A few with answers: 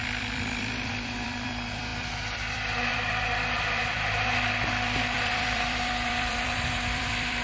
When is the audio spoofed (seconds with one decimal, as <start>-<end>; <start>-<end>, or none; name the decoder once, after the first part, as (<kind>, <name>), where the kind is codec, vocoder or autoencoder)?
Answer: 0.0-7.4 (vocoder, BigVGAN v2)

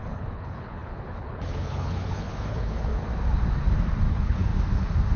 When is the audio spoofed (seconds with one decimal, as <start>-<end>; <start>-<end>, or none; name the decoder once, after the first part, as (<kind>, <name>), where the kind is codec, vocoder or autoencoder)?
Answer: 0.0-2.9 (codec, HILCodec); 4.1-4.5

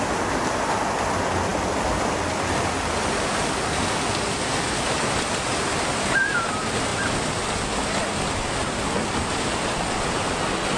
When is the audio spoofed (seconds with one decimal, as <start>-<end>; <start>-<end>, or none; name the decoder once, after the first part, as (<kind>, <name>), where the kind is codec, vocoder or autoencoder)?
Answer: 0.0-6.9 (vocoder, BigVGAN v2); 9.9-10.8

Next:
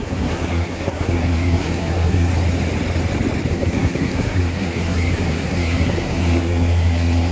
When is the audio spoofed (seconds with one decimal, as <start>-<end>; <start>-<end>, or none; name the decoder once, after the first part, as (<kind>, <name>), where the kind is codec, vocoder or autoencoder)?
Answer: 0.0-2.3 (codec, SNAC); 3.5-7.3